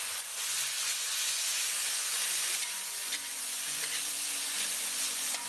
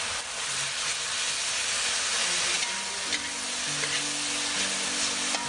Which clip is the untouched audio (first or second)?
second